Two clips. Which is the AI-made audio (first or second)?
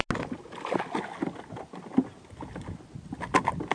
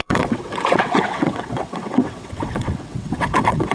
second